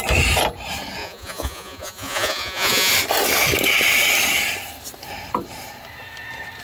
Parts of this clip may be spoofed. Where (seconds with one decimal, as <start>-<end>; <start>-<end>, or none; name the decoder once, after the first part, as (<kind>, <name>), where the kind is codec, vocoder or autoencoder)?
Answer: 1.0-2.9 (vocoder, Vocos)